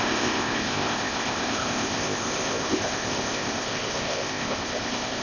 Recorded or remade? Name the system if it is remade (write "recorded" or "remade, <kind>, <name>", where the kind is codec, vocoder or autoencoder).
remade, codec, ZipCodec